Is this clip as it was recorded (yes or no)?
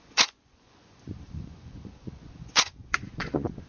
no